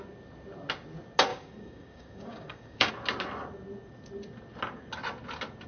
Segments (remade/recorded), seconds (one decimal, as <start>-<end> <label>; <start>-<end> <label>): 0.0-1.3 recorded; 1.3-2.9 remade; 2.9-5.7 recorded